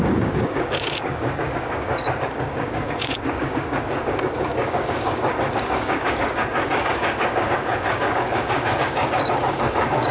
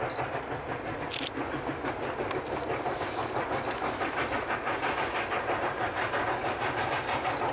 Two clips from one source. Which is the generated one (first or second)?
first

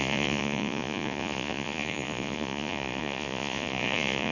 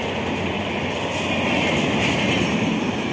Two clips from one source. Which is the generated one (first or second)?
first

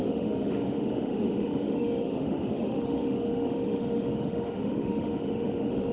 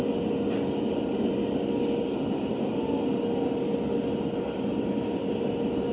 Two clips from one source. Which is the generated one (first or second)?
first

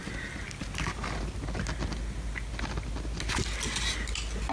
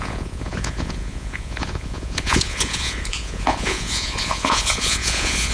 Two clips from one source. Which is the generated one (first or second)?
second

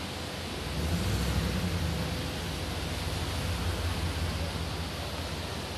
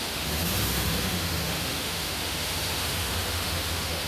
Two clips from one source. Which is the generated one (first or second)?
second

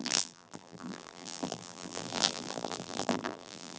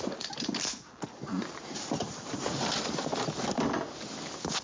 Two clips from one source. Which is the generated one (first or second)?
first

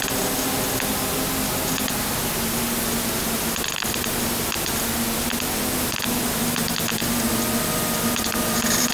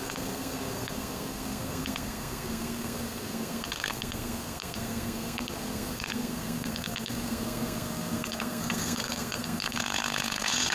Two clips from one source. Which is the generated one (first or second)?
second